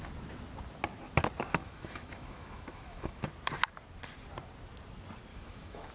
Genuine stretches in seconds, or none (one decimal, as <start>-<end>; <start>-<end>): 0.0-1.6; 3.2-5.3

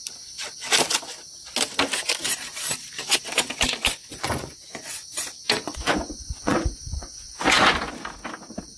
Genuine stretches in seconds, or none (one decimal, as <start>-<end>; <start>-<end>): 0.0-3.8; 7.7-8.8